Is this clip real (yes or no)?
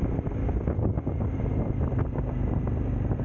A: yes